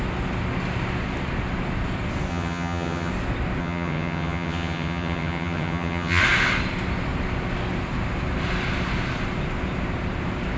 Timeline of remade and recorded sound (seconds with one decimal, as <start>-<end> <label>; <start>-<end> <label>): 0.0-2.3 recorded; 2.3-3.1 remade; 3.1-3.6 recorded; 3.6-6.2 remade; 6.2-10.6 recorded